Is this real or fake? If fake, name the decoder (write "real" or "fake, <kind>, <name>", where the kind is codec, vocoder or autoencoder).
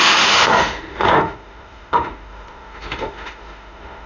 fake, autoencoder, DAC-VAE